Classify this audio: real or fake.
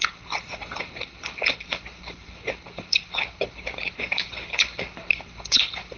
fake